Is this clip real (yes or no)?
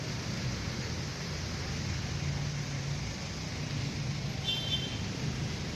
yes